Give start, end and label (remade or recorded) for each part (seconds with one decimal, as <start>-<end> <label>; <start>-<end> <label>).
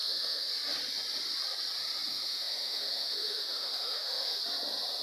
0.0-0.5 remade; 0.5-2.1 recorded; 2.1-4.4 remade; 4.4-5.0 recorded